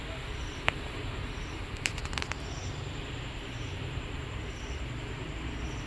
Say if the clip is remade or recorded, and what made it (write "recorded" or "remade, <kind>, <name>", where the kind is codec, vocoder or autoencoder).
remade, vocoder, BigVGAN v2